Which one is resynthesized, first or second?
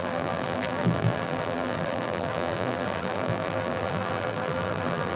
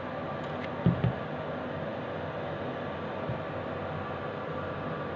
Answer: first